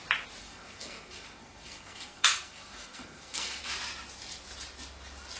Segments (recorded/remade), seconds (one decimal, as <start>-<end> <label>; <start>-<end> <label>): 0.0-0.4 recorded; 0.4-3.6 remade; 3.6-5.4 recorded